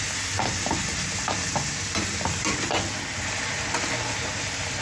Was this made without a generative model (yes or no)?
yes